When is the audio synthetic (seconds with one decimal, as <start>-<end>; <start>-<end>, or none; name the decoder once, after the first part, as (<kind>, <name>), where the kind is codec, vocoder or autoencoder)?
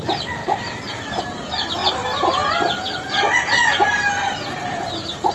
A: none